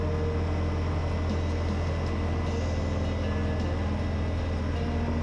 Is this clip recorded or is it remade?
recorded